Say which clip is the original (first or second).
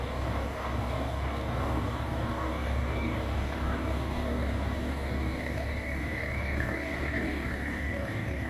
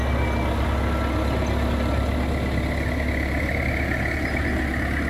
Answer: second